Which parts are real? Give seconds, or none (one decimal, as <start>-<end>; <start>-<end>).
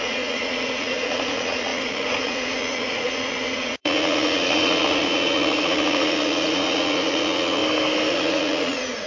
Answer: 7.6-8.1